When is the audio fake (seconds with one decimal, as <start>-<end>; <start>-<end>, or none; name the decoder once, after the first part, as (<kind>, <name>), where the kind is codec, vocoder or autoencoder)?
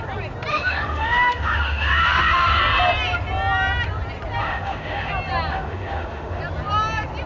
0.5-2.6 (autoencoder, DAC-VAE); 4.4-5.1; 5.5-6.4